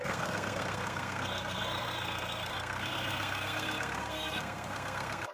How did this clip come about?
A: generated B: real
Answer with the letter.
A